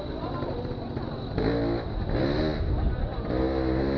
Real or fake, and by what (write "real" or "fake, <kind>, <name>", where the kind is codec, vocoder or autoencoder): real